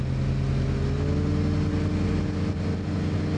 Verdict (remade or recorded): recorded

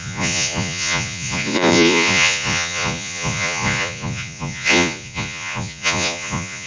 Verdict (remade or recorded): remade